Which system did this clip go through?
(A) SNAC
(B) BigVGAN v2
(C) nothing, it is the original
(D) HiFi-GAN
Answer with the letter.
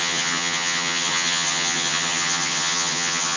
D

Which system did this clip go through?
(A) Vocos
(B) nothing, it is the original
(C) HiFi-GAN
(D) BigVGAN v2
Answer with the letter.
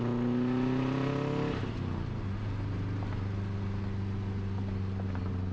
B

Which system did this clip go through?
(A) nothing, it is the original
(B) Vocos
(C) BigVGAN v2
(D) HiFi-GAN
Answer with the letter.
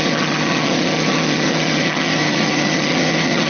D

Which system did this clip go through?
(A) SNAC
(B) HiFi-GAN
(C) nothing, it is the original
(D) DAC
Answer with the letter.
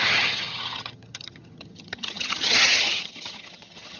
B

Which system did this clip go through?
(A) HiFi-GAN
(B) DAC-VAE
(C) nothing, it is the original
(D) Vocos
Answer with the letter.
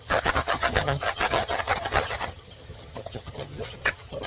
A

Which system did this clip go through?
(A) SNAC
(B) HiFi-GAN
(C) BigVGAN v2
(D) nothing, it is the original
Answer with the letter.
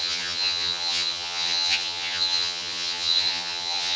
B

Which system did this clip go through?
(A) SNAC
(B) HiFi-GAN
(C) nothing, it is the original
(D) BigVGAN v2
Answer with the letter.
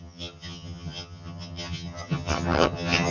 B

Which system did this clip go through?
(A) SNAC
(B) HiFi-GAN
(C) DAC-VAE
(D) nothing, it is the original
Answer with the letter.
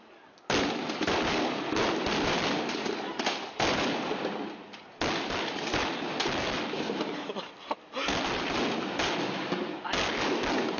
D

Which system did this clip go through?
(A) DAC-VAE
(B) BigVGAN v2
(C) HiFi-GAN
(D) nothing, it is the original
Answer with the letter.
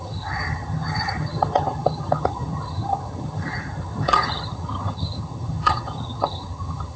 C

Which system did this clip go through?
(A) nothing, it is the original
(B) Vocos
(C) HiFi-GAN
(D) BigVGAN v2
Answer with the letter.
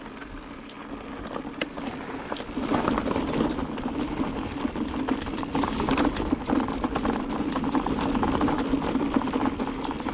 A